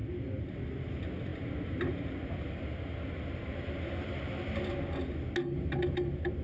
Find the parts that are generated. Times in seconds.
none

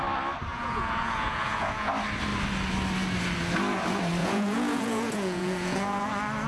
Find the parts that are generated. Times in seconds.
0.5-1.9 (vocoder, Vocos); 4.2-6.1

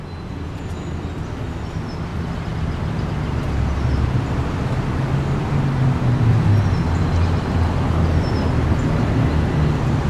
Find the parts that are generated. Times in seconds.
none

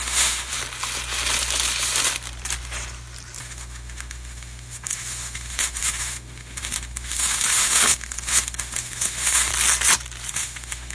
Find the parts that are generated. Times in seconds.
0.0-0.5 (autoencoder, DAC-VAE); 3.4-9.5; 10.3-10.9